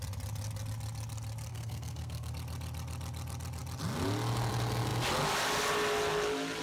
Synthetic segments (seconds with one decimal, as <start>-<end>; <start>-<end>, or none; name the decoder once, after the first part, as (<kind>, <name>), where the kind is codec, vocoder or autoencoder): 1.5-2.3 (codec, SNAC)

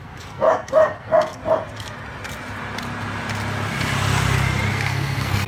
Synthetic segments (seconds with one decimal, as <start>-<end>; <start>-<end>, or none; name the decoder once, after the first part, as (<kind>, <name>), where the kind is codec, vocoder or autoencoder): 0.0-1.4 (codec, SNAC); 4.7-5.5